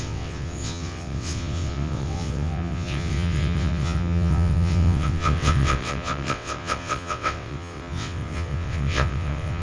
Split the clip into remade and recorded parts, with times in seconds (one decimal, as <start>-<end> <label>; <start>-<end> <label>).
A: 0.0-9.6 remade